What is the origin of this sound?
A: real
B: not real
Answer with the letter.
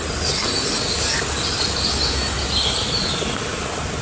A